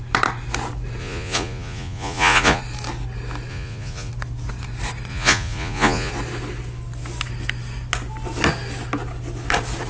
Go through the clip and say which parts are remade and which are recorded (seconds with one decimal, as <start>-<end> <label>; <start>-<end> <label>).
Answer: 0.0-1.0 recorded; 1.0-2.6 remade; 2.6-3.5 recorded; 3.5-4.1 remade; 4.1-5.1 recorded; 5.1-6.1 remade; 6.1-9.9 recorded